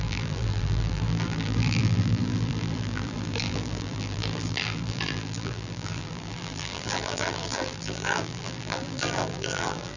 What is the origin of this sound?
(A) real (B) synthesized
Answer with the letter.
B